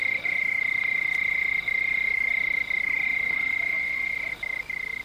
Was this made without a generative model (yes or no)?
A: yes